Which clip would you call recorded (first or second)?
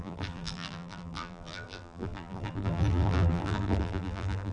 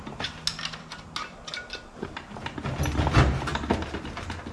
second